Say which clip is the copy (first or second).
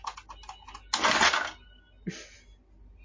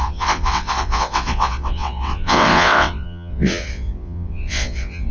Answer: second